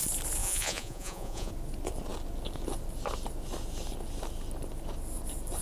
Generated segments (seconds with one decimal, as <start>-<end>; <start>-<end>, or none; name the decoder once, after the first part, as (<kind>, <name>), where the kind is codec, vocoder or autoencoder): 0.4-1.5 (vocoder, Vocos)